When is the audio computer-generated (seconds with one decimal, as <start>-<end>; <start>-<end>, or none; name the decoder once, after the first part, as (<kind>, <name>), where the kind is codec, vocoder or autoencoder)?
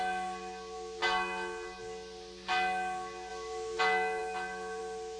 none